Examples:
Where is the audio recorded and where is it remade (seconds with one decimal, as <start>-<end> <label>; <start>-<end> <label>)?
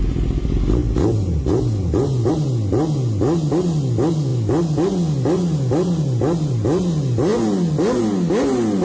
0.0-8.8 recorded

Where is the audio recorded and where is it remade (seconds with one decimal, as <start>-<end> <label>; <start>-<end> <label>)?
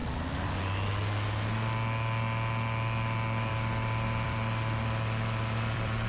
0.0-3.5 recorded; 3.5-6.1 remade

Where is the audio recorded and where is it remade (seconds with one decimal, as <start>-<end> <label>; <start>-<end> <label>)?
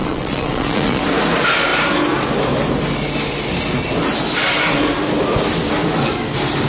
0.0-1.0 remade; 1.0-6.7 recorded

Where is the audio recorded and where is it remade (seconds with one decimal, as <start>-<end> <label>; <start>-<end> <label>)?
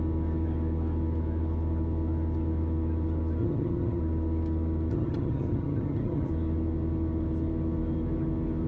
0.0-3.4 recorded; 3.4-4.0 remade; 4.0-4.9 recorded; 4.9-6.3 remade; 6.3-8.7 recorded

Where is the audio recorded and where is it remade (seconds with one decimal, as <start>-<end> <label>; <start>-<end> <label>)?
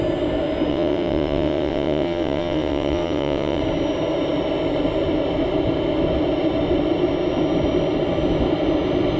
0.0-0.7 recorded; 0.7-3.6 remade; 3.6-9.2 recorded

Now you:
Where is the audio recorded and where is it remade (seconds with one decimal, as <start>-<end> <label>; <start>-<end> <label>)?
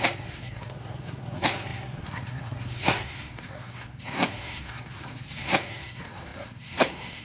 0.0-7.2 remade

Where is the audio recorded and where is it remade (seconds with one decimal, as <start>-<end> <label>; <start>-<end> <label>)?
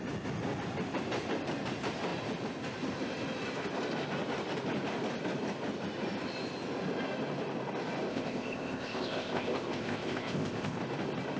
0.0-8.1 recorded; 8.1-10.8 remade; 10.8-11.4 recorded